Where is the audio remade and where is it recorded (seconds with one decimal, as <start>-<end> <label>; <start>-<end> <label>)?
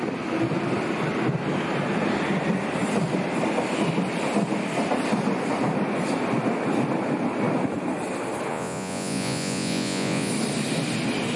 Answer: 0.0-8.5 recorded; 8.5-10.3 remade; 10.3-11.4 recorded